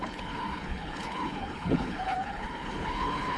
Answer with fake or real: fake